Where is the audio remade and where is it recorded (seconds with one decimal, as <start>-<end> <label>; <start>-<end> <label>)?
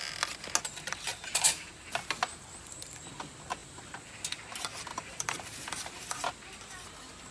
0.0-1.1 recorded; 1.1-1.7 remade; 1.7-3.6 recorded; 3.6-4.2 remade; 4.2-4.9 recorded; 4.9-6.3 remade; 6.3-7.3 recorded